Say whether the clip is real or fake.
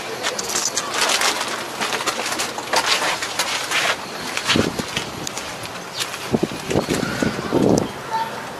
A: real